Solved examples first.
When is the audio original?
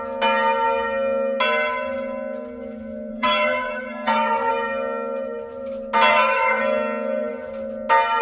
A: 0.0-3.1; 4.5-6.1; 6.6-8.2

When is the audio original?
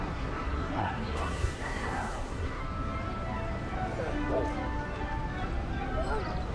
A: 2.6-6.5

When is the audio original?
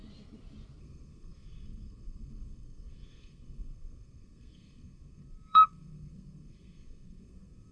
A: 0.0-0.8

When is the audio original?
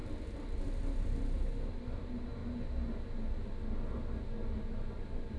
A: 0.0-5.4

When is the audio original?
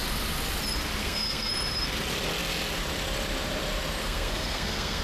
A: 0.0-1.0; 1.5-4.0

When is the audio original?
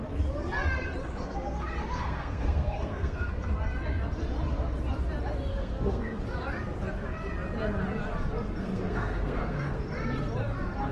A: 0.0-1.8; 3.3-5.5; 6.2-8.6; 9.8-10.9